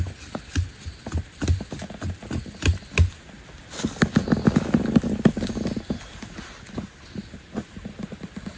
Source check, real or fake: real